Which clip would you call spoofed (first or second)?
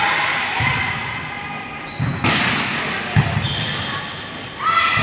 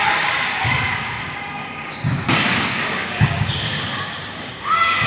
second